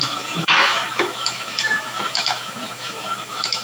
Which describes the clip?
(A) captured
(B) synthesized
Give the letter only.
B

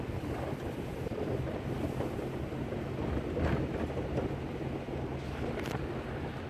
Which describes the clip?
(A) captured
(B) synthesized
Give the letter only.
A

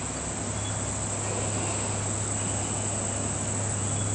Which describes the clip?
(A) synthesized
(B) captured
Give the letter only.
B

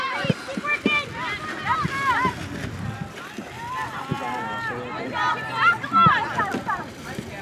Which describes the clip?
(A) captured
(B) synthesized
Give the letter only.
A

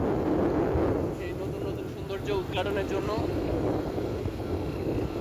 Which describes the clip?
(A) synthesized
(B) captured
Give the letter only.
B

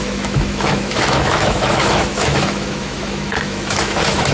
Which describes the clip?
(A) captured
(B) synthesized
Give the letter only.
B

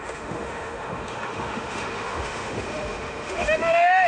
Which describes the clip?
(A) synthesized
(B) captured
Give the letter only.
A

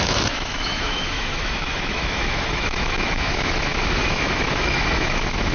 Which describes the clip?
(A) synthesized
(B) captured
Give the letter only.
A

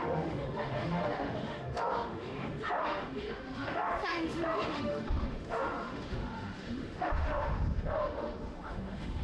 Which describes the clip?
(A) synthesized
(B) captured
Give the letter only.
A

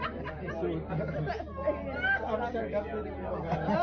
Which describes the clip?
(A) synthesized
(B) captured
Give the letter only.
B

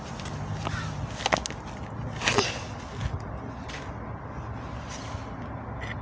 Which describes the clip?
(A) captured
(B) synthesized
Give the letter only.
A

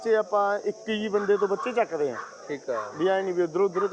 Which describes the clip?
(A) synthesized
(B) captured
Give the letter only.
B